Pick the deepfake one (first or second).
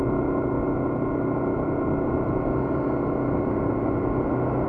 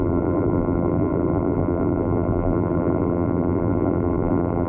second